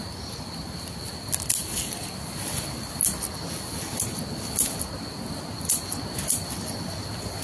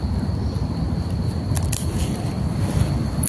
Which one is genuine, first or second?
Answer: first